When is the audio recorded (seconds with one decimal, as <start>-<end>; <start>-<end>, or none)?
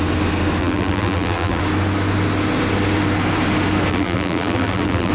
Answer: 0.0-0.6; 1.6-3.9